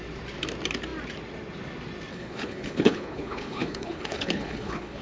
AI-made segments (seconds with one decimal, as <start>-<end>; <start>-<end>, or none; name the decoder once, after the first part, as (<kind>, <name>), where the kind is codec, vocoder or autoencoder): 2.1-5.0 (codec, HILCodec)